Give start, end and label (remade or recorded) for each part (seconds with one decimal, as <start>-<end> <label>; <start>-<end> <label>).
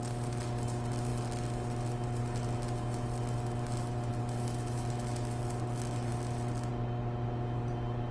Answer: 0.0-8.1 recorded